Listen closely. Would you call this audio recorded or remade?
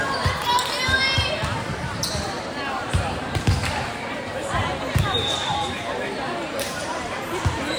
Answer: remade